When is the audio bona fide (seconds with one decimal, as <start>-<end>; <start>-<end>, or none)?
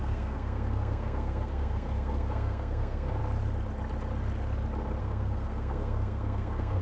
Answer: 3.2-5.0